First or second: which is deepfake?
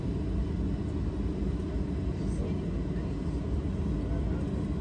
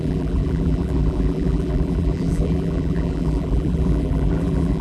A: second